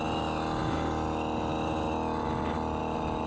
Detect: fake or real real